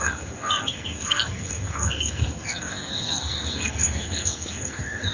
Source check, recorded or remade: remade